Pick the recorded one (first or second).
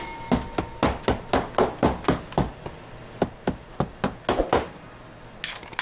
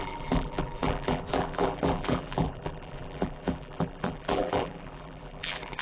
first